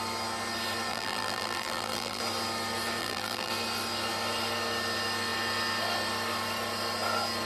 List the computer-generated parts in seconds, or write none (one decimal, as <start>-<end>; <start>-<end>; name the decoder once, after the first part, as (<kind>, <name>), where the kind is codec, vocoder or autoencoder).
0.9-2.2 (vocoder, BigVGAN v2); 3.0-3.5